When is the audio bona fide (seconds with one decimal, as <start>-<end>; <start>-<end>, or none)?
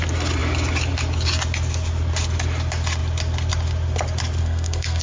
0.0-4.4